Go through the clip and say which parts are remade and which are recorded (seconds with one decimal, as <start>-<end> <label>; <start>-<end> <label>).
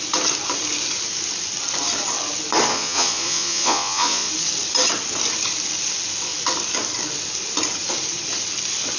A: 0.0-2.7 recorded; 2.7-4.3 remade; 4.3-9.0 recorded